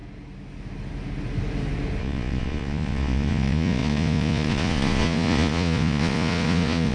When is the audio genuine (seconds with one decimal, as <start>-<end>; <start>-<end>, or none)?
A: 0.0-2.0